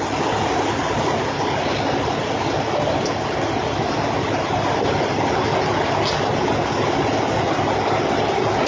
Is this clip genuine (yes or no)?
yes